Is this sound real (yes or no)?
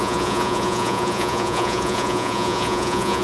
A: no